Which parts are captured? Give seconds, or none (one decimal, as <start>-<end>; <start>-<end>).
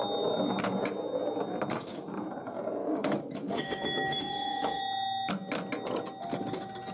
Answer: 0.0-2.8; 4.8-6.9